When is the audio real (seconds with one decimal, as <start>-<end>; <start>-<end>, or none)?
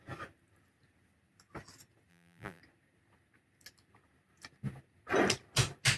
0.0-2.1; 2.6-6.0